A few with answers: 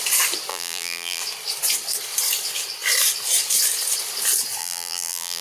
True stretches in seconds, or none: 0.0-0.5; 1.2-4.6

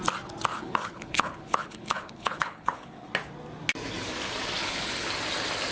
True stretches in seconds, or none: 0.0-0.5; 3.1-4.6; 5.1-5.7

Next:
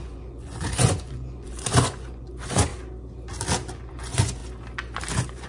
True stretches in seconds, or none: 2.7-3.9; 4.4-5.1

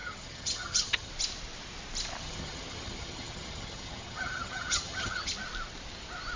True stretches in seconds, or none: 1.1-2.2; 5.3-6.4

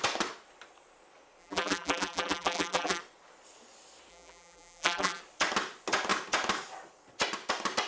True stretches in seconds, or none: 0.0-1.4; 3.0-4.1; 5.2-7.9

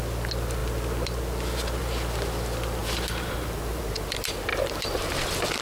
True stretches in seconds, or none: 0.0-2.8; 3.8-4.5; 5.1-5.6